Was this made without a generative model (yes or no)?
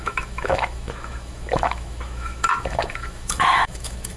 no